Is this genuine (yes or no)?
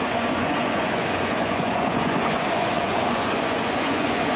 no